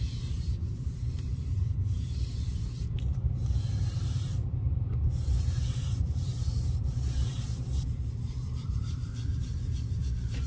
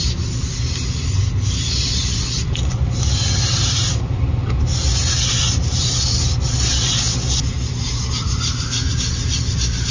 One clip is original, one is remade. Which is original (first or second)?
second